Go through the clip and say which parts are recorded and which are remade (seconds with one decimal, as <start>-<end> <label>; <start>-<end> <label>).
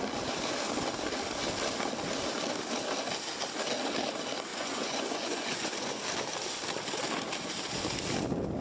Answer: 0.0-4.5 recorded; 4.5-6.0 remade; 6.0-8.6 recorded